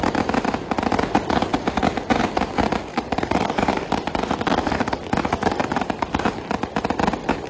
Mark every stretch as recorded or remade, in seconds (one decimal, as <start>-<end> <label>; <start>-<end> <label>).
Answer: 0.0-2.9 recorded; 2.9-6.2 remade; 6.2-7.5 recorded